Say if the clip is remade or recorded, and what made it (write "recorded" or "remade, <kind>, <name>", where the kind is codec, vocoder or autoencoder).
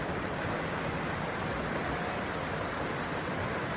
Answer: recorded